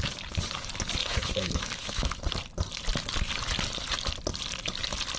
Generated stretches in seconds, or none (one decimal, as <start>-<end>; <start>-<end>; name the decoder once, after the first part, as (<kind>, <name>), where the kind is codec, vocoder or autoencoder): 1.0-2.1 (autoencoder, DAC-VAE)